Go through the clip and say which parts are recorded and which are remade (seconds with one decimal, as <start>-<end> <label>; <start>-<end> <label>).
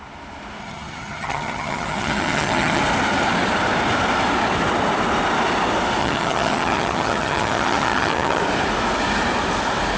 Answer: 0.0-0.6 recorded; 0.6-2.8 remade; 2.8-6.0 recorded; 6.0-8.4 remade; 8.4-10.0 recorded